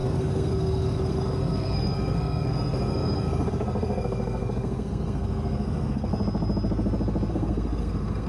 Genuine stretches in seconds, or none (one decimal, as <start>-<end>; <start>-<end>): 6.1-7.3

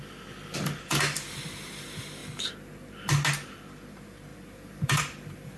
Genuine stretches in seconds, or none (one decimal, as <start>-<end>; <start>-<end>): 0.0-5.6

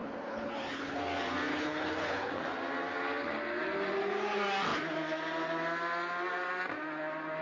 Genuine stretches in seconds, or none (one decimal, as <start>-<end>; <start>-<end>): 1.0-1.5; 2.3-7.4

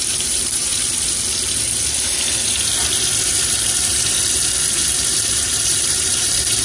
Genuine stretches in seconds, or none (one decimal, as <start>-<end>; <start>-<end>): 0.7-4.7

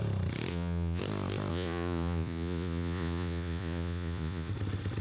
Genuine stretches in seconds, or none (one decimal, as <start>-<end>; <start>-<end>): 0.0-0.5; 1.0-1.5; 4.5-5.0

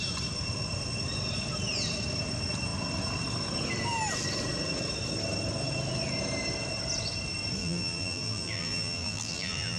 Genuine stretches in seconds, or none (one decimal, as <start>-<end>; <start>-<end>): 0.0-7.6